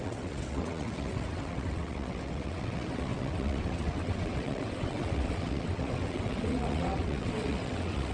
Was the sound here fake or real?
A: fake